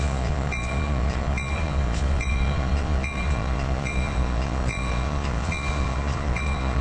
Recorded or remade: remade